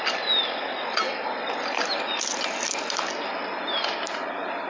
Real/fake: real